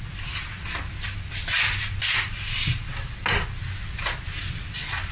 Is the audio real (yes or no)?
yes